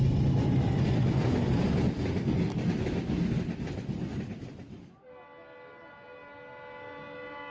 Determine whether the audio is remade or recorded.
recorded